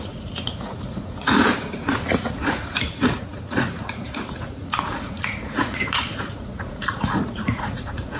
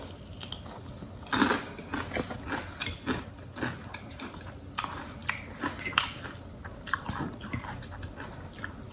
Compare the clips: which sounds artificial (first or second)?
first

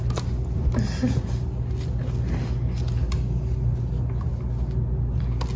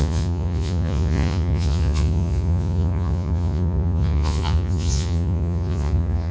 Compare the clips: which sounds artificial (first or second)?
second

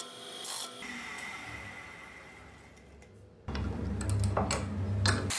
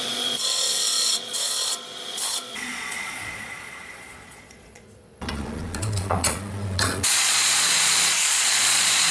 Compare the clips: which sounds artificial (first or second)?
second